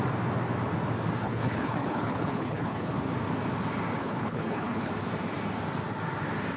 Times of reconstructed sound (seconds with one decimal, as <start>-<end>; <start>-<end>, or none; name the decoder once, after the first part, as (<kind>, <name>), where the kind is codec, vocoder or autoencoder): 1.2-2.9 (codec, HILCodec); 4.0-4.9